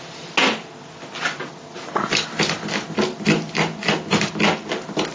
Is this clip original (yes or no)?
yes